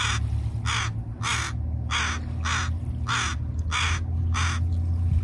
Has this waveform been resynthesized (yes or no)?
no